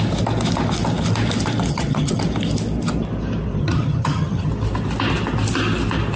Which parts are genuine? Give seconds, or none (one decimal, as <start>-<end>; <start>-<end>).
0.0-1.7; 2.2-3.6; 4.5-6.2